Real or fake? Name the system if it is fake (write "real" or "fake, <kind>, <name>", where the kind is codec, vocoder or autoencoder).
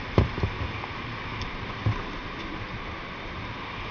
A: real